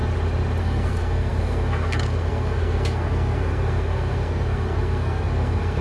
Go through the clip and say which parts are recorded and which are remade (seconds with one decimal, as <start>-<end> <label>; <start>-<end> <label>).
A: 0.0-0.6 recorded; 0.6-5.8 remade